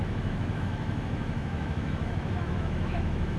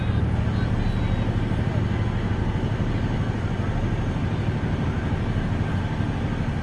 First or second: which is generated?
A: first